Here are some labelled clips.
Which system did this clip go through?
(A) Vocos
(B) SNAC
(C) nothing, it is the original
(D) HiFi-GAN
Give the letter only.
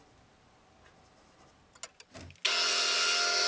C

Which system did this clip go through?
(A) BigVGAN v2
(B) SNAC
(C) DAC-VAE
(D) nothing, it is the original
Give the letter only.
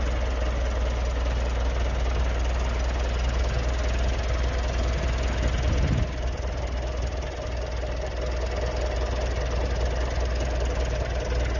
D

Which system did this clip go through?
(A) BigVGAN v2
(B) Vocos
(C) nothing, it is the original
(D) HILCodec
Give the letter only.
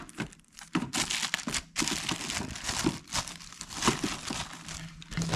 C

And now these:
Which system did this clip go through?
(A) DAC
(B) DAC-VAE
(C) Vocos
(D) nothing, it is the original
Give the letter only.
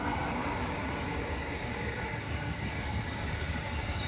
A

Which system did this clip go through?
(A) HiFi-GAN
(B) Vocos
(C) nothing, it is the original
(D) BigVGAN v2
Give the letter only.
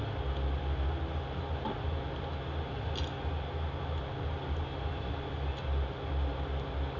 C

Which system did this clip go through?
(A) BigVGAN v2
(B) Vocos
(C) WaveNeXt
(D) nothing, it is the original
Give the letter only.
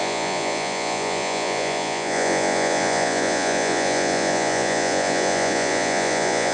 B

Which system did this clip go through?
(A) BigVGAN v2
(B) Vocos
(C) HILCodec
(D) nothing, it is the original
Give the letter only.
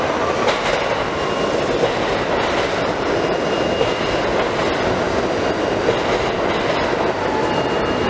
D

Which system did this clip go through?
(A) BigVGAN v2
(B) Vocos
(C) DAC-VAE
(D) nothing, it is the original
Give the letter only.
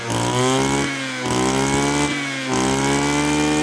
D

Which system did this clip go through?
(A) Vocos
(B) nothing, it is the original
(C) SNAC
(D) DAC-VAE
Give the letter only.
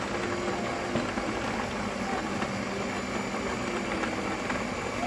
B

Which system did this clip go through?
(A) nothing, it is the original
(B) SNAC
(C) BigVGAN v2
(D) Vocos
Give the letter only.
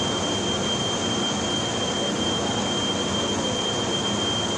A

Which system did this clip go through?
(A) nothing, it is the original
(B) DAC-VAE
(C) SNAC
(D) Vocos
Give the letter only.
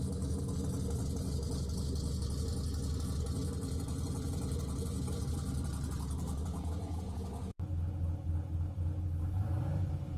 A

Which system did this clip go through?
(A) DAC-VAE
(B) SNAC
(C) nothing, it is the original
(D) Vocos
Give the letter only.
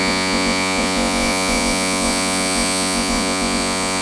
D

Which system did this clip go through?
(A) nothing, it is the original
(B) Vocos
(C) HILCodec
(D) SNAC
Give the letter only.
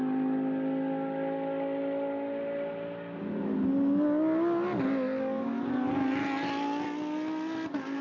A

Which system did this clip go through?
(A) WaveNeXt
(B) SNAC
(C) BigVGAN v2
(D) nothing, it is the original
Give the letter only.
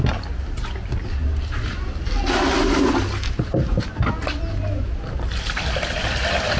D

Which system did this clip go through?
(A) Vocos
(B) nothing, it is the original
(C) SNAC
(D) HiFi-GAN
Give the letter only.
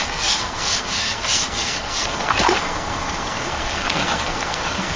C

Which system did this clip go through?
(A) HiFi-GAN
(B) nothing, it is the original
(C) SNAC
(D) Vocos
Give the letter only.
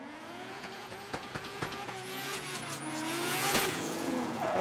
D